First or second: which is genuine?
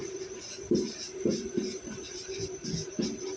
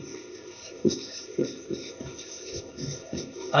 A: first